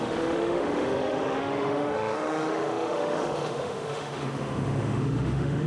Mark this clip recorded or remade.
remade